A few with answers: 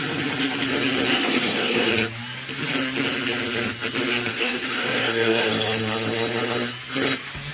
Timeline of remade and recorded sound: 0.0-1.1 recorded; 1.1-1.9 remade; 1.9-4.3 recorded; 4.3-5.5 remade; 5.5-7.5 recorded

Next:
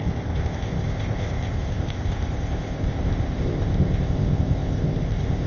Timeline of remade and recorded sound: 0.0-5.5 remade